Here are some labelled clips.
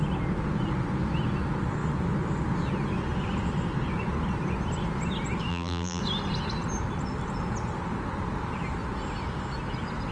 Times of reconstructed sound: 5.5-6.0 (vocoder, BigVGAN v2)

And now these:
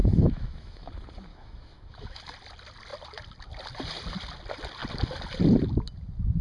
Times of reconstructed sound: 0.0-0.9 (autoencoder, DAC-VAE); 1.3-2.2

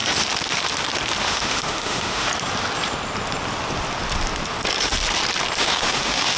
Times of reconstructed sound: 1.2-2.3 (autoencoder, DAC-VAE); 5.6-6.4